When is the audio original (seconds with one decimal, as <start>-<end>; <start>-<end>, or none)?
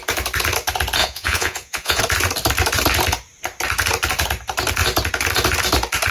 0.0-1.0; 2.0-6.1